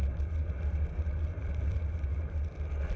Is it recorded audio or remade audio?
recorded